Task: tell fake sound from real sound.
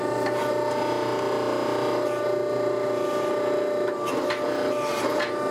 real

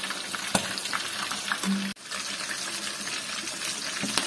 real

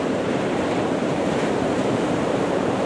fake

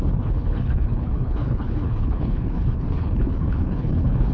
fake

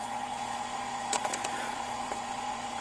fake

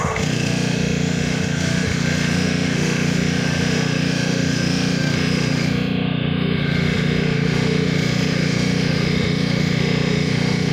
fake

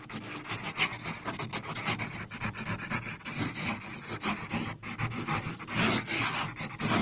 real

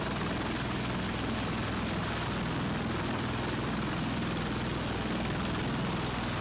real